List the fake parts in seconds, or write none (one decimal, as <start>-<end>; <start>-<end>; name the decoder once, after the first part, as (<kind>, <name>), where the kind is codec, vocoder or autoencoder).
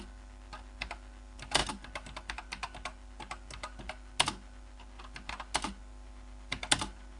none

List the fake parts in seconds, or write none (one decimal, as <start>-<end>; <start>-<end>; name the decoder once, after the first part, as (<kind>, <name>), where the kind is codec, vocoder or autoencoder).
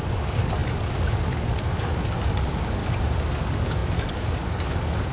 0.0-2.8 (codec, DAC); 3.4-5.1